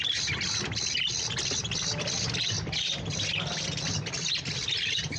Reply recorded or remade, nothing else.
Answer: recorded